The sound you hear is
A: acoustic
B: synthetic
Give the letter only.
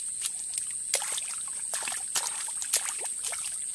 A